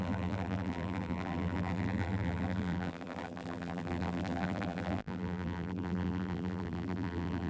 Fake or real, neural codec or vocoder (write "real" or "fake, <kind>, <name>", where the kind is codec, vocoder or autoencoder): fake, vocoder, BigVGAN v2